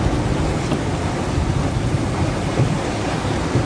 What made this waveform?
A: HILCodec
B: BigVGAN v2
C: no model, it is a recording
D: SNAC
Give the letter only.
C